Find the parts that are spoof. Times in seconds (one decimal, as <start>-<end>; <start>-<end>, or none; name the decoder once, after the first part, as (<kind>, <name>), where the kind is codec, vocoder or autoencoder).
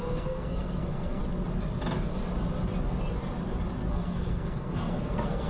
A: 0.0-1.2 (codec, SNAC); 3.9-5.5